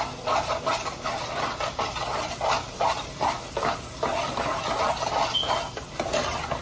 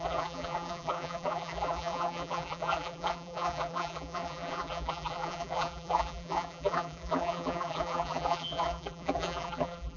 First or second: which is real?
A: first